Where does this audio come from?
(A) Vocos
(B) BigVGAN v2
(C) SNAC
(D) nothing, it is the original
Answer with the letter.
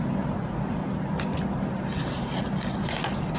D